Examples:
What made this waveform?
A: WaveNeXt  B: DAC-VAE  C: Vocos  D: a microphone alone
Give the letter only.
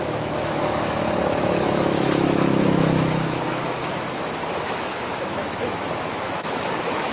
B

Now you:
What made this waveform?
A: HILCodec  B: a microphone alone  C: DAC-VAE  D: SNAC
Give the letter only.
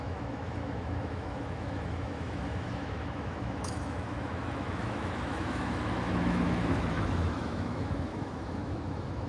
C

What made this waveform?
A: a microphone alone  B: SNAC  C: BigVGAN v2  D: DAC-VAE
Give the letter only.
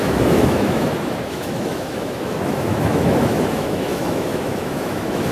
D